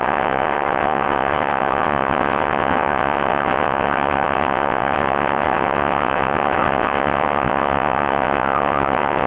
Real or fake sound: fake